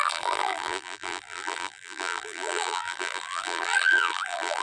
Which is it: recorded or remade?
remade